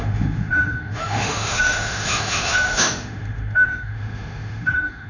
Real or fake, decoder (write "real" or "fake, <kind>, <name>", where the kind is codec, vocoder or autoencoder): fake, autoencoder, DAC-VAE